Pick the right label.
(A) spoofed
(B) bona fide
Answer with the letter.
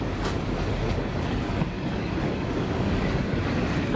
A